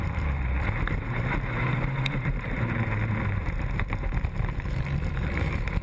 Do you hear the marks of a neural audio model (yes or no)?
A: yes